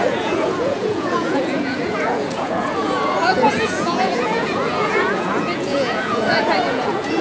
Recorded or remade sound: remade